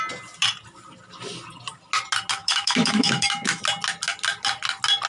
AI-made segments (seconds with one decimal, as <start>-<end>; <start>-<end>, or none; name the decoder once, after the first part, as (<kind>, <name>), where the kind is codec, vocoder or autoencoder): 2.4-3.6 (autoencoder, DAC-VAE)